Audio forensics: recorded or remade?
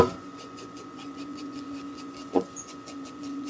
remade